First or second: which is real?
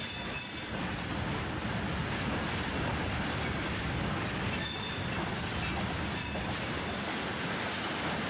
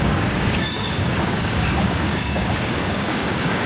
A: first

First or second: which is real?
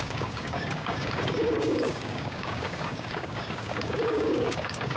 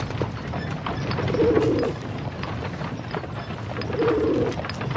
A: second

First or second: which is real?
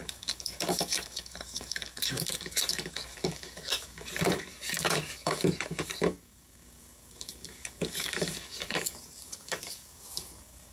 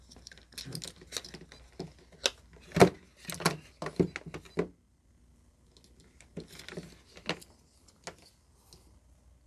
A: second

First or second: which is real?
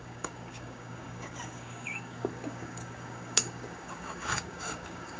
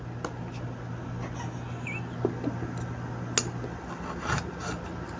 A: second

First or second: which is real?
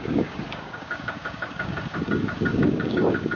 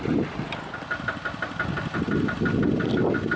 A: second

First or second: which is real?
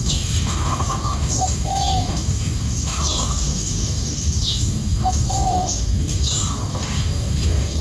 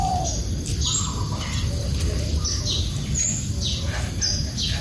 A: second